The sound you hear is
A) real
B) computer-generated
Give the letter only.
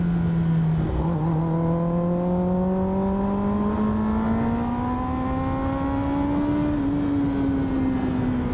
A